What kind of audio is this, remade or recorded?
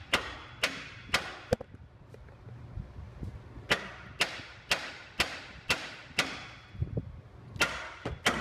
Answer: recorded